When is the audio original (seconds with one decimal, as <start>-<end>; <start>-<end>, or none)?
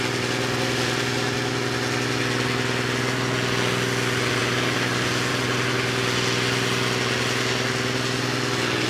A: 0.0-8.9